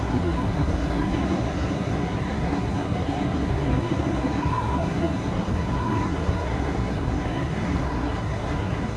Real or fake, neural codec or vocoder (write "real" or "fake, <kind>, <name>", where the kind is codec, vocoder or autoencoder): fake, codec, SNAC